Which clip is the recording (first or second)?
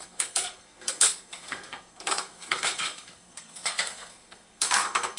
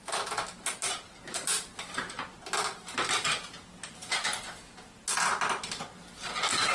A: second